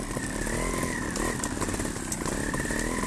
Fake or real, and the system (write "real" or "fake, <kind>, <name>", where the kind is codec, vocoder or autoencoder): real